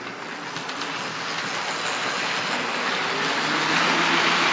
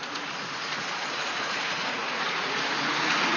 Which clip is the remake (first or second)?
second